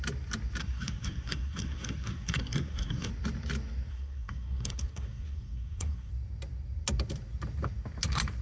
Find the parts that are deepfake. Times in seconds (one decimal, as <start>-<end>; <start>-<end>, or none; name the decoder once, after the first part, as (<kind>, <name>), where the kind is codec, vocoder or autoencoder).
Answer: 0.6-3.1 (codec, SNAC); 3.9-6.1